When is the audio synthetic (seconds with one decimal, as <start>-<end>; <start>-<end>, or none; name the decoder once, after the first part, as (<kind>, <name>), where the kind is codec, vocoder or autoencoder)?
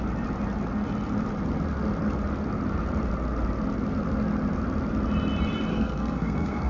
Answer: 5.7-6.7 (codec, SNAC)